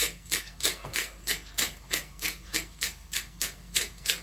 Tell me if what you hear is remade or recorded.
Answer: remade